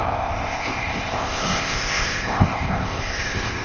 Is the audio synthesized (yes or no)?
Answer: yes